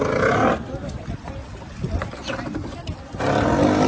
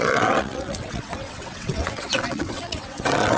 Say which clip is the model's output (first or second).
second